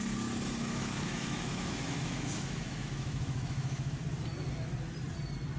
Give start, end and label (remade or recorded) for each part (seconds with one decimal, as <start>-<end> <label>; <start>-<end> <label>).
0.0-0.6 recorded; 0.6-4.0 remade; 4.0-5.6 recorded